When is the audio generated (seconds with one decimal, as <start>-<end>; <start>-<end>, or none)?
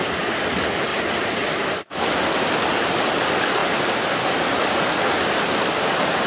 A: none